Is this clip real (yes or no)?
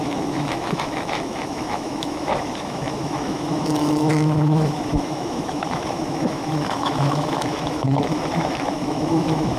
no